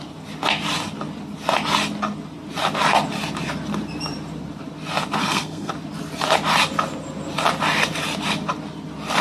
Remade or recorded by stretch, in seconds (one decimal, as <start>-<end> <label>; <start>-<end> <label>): 0.0-5.2 recorded; 5.2-5.7 remade; 5.7-9.2 recorded